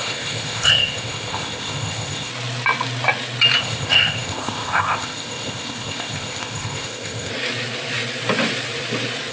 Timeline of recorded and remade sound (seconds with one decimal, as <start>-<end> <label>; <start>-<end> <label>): 0.0-2.3 remade; 2.3-3.6 recorded; 3.6-7.3 remade; 7.3-9.3 recorded